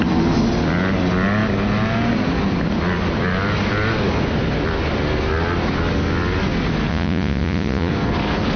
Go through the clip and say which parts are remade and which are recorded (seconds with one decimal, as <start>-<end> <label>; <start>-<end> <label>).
0.0-6.9 recorded; 6.9-7.9 remade; 7.9-8.6 recorded